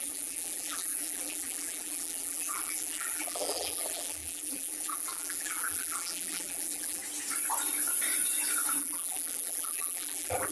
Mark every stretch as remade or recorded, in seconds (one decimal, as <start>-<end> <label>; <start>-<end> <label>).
0.0-7.0 remade; 7.0-8.8 recorded; 8.8-10.5 remade